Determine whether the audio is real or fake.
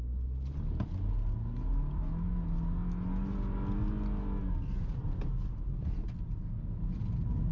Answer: real